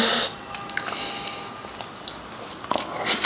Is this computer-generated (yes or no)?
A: no